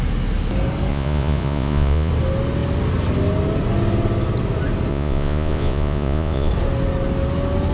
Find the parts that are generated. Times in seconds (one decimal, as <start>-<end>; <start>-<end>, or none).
0.9-2.1; 4.9-6.5